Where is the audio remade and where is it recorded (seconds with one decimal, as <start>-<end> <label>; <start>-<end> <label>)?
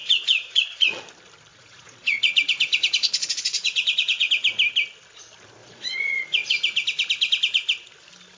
0.0-1.0 remade; 1.0-1.5 recorded; 1.5-4.3 remade; 4.3-5.6 recorded; 5.6-6.6 remade; 6.6-8.4 recorded